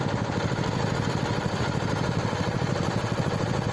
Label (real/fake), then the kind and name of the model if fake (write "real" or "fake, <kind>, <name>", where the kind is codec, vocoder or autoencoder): real